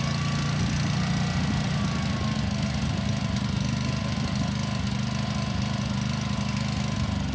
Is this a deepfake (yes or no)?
no